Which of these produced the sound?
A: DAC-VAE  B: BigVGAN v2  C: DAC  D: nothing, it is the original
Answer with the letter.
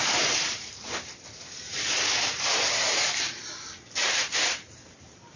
B